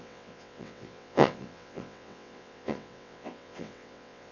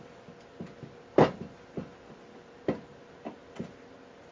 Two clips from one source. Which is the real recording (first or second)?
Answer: second